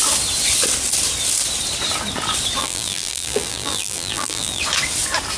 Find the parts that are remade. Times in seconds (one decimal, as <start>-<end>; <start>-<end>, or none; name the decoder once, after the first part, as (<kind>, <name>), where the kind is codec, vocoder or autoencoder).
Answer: 2.6-4.6 (vocoder, BigVGAN v2)